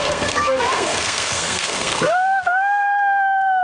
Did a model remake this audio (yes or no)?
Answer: yes